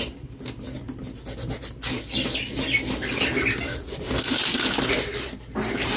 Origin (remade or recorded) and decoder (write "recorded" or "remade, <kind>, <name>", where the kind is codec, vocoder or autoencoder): recorded